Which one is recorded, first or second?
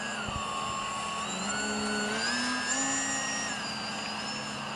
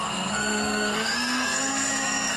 first